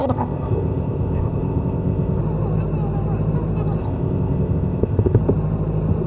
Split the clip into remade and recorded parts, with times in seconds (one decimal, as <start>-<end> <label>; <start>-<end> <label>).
0.0-2.2 remade; 2.2-3.8 recorded; 3.8-5.2 remade; 5.2-6.1 recorded